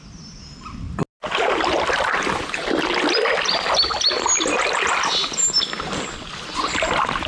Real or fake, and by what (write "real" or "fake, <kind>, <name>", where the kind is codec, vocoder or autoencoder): real